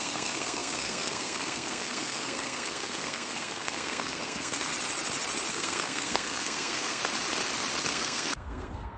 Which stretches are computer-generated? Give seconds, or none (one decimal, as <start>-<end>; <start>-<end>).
0.0-4.7; 5.5-7.0; 7.9-9.0